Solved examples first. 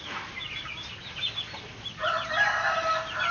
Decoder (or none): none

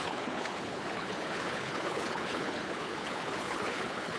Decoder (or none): codec, HILCodec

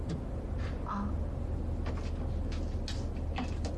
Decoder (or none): none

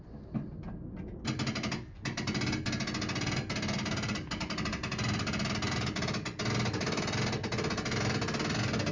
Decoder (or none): none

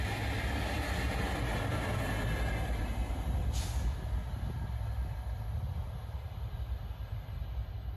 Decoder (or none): none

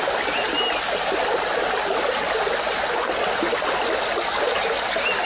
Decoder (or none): none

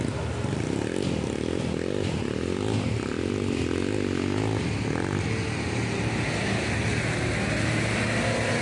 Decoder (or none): none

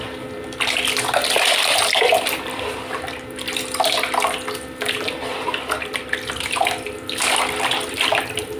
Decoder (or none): none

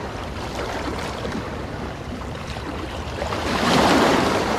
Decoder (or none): vocoder, BigVGAN v2